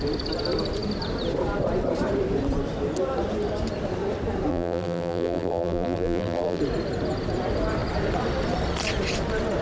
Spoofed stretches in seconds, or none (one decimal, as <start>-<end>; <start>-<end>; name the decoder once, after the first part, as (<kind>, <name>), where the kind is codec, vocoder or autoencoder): 4.5-6.6 (vocoder, BigVGAN v2)